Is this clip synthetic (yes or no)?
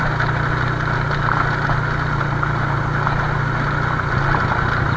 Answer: no